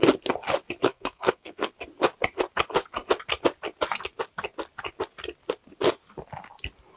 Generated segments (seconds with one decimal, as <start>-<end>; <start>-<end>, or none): 0.8-1.7